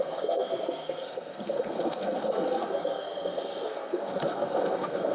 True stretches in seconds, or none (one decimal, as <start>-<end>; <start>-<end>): none